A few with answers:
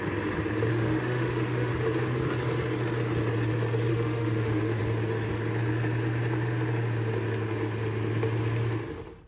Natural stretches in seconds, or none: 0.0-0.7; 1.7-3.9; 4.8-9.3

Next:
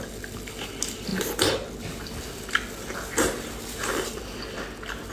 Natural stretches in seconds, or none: 0.0-5.1